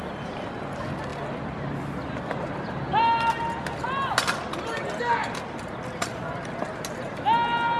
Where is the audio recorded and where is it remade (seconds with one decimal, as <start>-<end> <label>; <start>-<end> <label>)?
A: 0.0-7.8 recorded